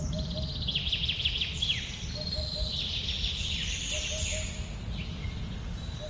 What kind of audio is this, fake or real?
real